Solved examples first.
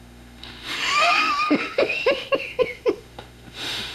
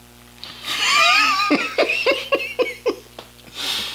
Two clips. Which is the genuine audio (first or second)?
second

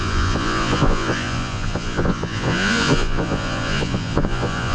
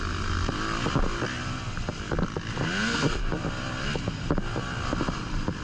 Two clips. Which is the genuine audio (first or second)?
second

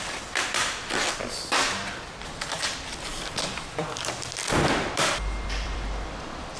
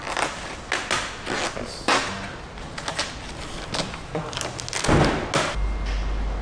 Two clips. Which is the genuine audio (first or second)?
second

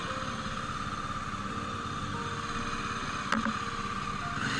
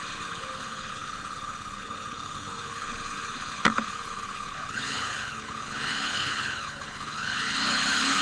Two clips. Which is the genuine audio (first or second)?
first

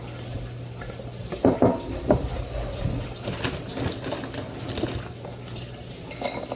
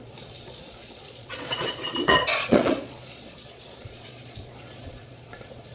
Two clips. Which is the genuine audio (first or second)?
first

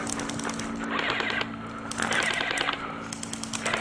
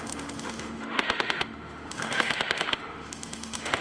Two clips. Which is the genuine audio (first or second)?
first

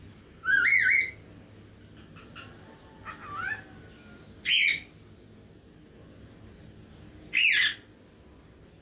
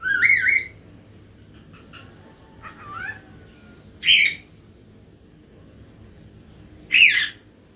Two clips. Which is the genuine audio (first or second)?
first